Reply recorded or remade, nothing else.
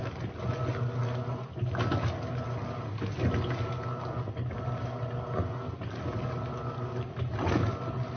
recorded